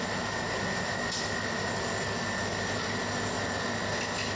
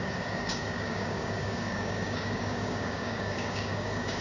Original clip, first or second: first